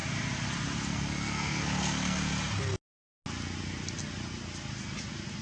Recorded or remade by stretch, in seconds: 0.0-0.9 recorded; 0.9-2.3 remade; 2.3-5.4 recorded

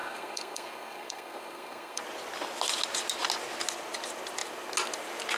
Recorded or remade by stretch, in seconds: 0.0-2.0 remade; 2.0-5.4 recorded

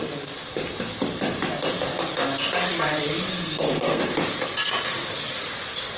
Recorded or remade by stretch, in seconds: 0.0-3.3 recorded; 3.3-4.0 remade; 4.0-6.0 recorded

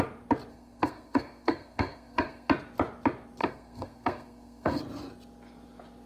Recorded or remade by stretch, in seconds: 0.0-0.5 recorded; 0.5-2.5 remade; 2.5-3.4 recorded; 3.4-4.8 remade; 4.8-6.1 recorded